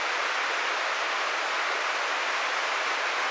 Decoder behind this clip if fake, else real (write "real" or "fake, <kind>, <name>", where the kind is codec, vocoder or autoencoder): real